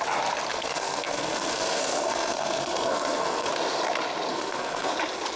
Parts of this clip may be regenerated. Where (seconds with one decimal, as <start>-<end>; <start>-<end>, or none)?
0.5-3.5; 4.3-4.9